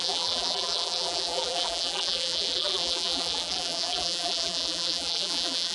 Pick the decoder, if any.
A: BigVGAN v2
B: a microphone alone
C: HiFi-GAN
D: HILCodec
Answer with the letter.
A